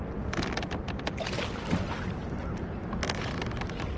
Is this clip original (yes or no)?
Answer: yes